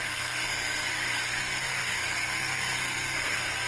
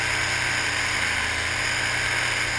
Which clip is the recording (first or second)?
second